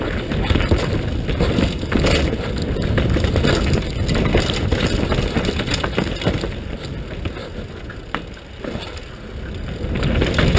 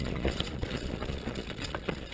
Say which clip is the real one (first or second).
first